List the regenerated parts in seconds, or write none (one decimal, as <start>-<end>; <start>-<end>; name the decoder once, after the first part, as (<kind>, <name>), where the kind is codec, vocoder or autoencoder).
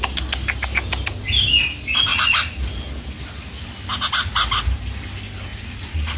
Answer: 2.1-2.6 (vocoder, Vocos); 5.5-6.2